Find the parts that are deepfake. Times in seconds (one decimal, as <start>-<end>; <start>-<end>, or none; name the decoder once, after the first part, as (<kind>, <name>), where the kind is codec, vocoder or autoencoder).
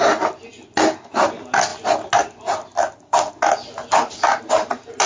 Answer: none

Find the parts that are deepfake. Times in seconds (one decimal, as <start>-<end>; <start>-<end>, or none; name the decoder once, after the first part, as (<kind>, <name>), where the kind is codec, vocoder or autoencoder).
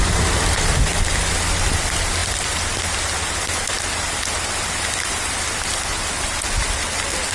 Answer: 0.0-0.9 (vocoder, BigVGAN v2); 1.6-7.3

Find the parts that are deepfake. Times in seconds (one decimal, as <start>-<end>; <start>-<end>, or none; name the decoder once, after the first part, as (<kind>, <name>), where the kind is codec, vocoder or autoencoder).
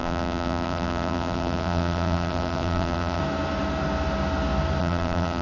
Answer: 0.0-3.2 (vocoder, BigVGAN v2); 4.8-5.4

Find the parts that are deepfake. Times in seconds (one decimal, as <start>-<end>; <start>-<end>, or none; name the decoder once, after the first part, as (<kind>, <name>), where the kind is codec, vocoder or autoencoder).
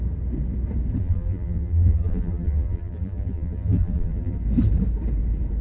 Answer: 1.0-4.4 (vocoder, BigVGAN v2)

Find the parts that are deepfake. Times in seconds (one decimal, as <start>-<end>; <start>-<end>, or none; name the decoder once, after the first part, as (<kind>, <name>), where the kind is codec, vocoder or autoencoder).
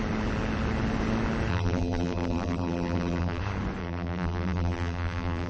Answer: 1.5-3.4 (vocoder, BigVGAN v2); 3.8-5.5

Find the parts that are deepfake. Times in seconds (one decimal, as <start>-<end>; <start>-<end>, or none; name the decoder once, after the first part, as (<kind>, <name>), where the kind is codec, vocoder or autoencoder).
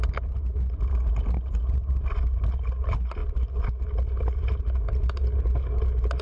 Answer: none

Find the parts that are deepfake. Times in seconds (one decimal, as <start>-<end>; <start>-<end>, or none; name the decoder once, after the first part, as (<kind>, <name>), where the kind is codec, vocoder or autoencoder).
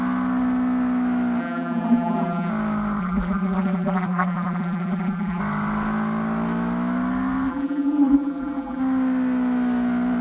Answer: 1.4-2.5 (vocoder, BigVGAN v2); 3.0-5.4; 7.5-8.8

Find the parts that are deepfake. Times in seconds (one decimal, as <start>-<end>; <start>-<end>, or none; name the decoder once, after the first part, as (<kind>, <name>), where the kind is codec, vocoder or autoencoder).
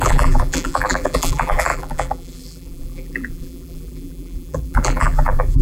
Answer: 0.0-5.6 (vocoder, BigVGAN v2)